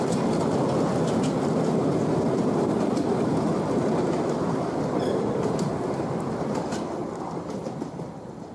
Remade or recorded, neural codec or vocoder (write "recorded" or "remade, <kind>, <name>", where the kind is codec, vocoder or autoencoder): recorded